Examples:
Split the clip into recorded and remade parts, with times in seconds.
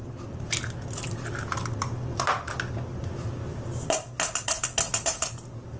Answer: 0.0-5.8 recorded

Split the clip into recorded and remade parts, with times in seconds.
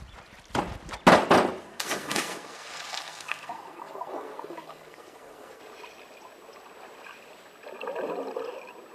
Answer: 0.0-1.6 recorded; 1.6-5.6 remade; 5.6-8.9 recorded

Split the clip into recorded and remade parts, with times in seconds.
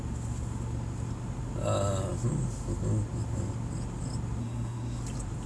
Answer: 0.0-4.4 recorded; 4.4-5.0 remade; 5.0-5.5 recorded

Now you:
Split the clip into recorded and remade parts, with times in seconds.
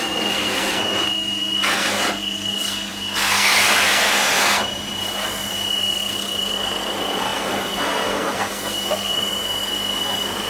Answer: 0.0-4.6 remade; 4.6-5.2 recorded; 5.2-10.5 remade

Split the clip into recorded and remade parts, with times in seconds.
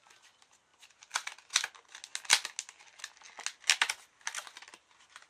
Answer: 0.0-5.3 recorded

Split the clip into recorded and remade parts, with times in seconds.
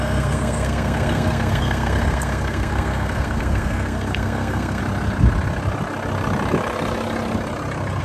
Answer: 0.0-4.8 remade; 4.8-8.0 recorded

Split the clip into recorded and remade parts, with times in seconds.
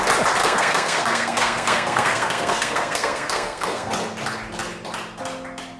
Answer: 0.0-0.4 recorded; 0.4-3.9 remade; 3.9-5.8 recorded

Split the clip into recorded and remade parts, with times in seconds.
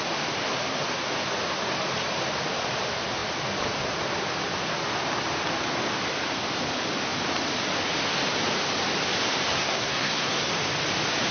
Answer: 0.0-9.5 recorded; 9.5-10.5 remade; 10.5-11.3 recorded